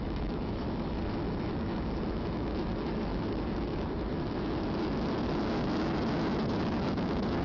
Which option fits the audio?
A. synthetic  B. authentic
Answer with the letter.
A